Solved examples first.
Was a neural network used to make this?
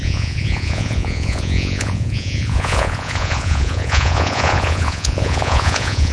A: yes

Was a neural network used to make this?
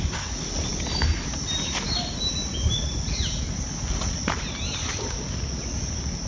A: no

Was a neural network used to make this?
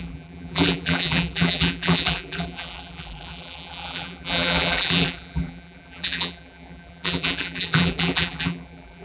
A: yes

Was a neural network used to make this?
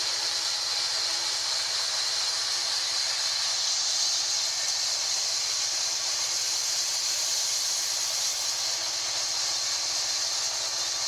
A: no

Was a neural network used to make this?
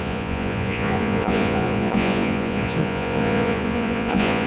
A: yes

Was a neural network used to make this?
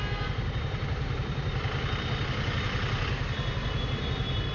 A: no